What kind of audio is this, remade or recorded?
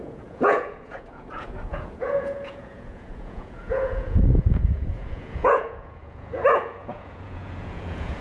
remade